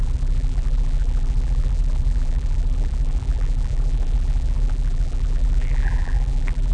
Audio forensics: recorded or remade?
remade